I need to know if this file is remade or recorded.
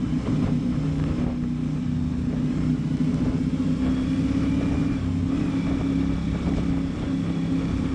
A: recorded